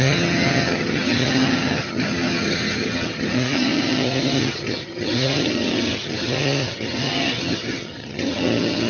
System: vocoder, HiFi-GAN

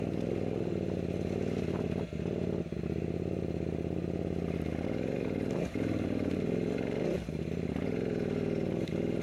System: none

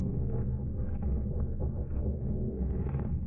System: codec, SNAC